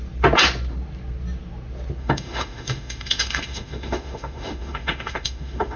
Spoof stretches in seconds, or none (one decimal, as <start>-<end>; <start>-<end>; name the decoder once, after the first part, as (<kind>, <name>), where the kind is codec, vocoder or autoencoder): 2.0-5.8 (autoencoder, DAC-VAE)